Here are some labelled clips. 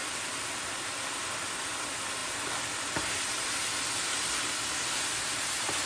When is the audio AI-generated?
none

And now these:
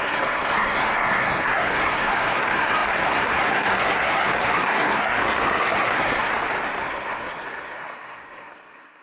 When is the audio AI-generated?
0.0-6.3 (codec, SNAC); 6.8-9.0